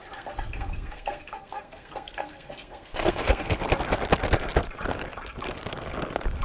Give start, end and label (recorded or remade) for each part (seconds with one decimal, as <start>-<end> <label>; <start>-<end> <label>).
0.0-3.6 remade; 3.6-6.4 recorded